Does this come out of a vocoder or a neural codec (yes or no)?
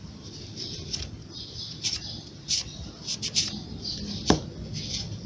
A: no